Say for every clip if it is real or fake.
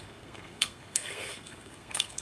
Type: fake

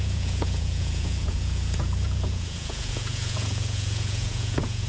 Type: fake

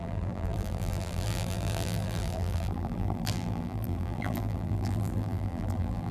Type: fake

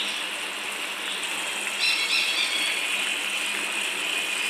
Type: real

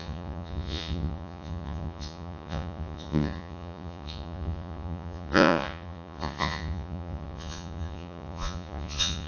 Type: fake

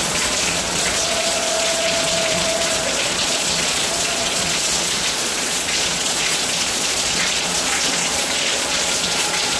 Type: fake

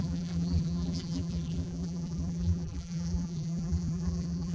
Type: fake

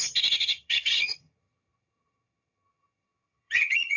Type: fake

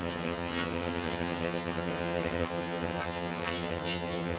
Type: fake